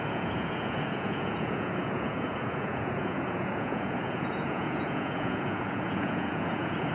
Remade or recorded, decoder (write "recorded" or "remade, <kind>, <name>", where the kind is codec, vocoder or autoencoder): remade, vocoder, Vocos